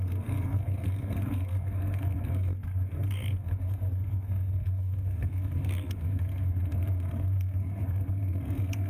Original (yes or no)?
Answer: no